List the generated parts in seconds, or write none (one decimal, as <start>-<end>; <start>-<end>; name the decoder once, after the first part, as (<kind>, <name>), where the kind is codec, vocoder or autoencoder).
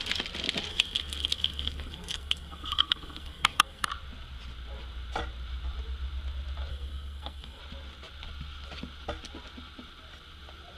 0.7-3.9 (codec, SNAC); 6.7-7.6